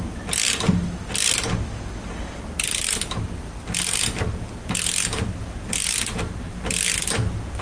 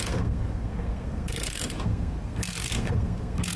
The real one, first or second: first